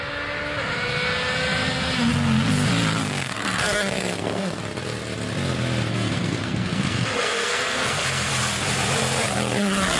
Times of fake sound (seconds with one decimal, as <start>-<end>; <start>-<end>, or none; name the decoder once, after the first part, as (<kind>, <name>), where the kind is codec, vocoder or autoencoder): 3.0-4.6 (codec, SNAC); 5.9-8.3